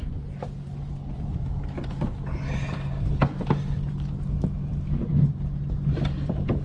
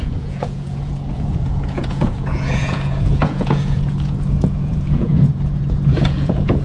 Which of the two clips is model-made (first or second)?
second